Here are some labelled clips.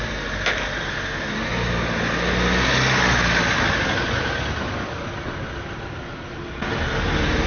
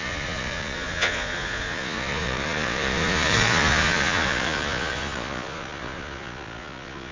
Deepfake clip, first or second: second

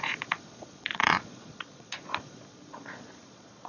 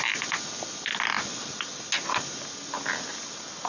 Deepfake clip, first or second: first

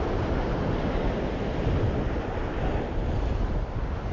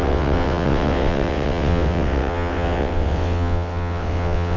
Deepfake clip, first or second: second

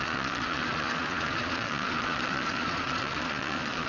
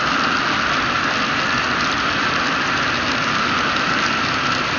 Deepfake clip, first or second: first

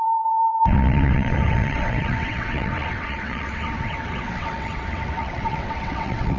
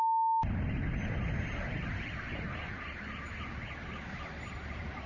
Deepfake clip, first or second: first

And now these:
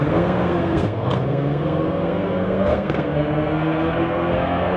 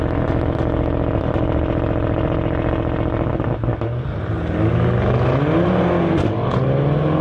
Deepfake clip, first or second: first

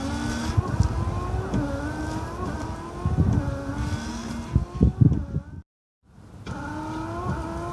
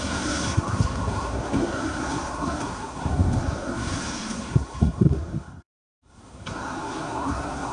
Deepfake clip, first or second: second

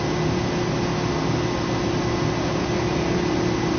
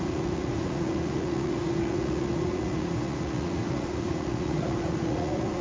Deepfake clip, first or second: second